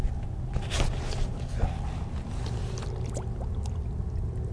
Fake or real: real